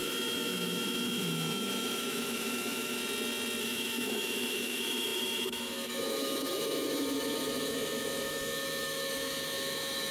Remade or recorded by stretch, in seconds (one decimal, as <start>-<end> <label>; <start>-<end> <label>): 0.0-3.0 remade; 3.0-3.6 recorded; 3.6-10.1 remade